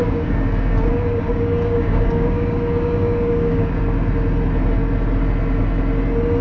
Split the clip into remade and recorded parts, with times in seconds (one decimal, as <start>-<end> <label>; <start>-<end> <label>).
0.0-3.8 remade; 3.8-6.4 recorded